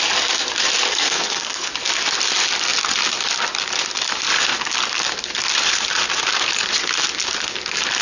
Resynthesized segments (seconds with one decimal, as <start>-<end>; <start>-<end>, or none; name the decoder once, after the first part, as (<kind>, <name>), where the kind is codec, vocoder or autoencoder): 0.9-1.7 (codec, SNAC)